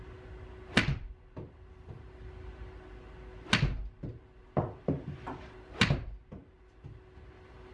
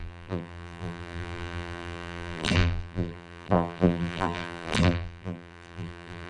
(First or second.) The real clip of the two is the first